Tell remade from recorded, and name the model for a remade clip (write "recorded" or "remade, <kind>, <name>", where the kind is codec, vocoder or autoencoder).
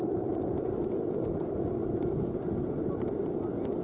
recorded